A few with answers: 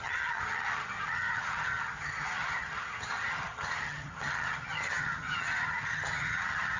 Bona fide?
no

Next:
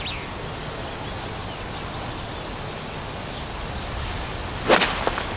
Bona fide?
yes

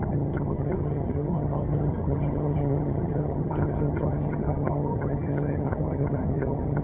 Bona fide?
no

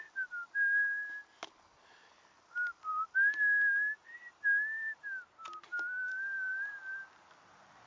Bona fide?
yes